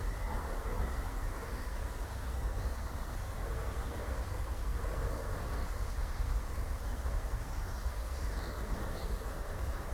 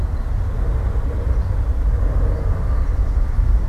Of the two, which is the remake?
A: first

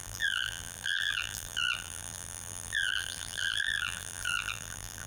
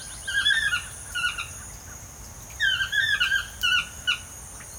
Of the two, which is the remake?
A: first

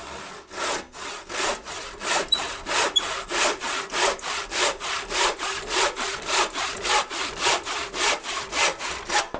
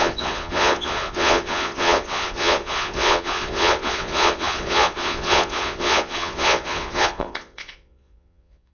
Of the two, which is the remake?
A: second